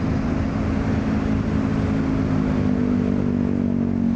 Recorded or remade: recorded